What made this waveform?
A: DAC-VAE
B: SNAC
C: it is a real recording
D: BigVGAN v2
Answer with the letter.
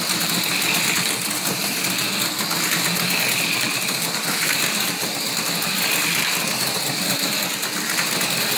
C